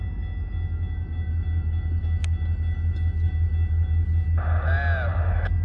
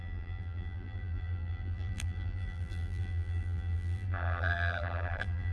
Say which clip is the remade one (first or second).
second